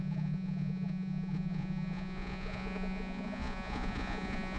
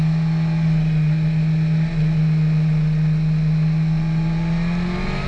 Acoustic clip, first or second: second